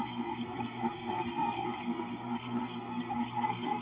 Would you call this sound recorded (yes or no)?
no